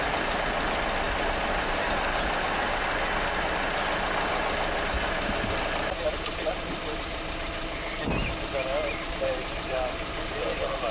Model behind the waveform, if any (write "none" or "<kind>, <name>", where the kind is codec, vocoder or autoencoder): none